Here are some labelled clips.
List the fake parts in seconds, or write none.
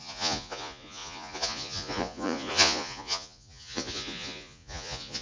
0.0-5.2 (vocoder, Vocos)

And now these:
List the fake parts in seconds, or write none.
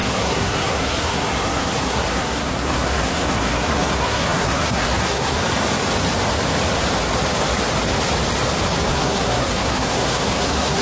0.0-5.4 (codec, SNAC); 8.9-10.8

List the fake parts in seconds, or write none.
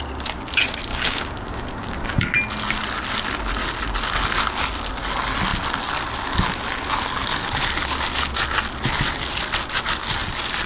0.9-2.2 (codec, DAC)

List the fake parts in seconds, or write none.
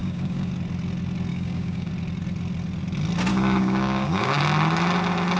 0.0-0.5 (codec, DAC); 1.3-1.9; 3.3-4.4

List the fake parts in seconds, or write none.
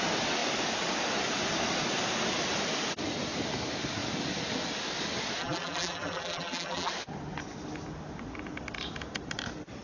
5.4-6.9 (vocoder, BigVGAN v2)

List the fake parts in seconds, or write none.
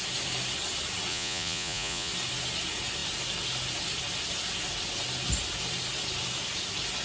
1.1-2.1 (vocoder, Vocos)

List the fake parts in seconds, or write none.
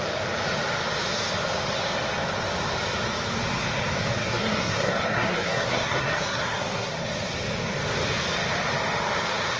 4.2-6.9 (codec, SNAC)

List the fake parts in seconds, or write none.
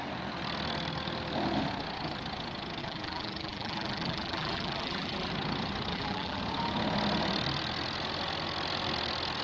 2.8-5.3 (vocoder, BigVGAN v2); 5.9-6.4